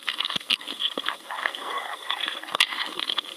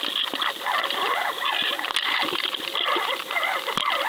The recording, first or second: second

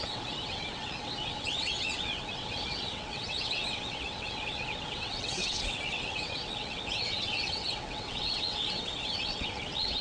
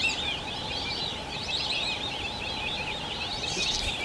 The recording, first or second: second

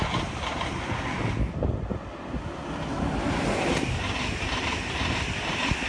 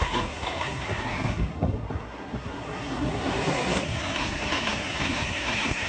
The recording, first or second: first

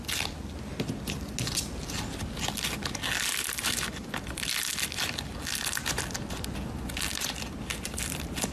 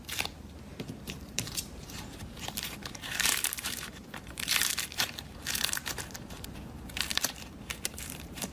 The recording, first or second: first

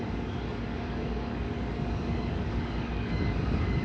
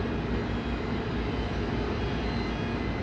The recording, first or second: second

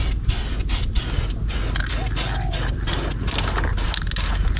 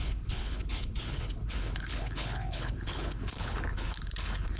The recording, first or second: first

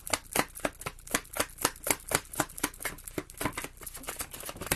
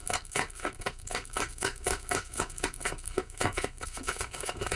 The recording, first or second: first